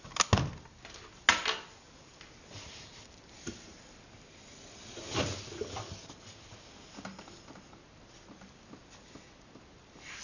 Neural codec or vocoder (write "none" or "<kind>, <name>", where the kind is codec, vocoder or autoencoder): none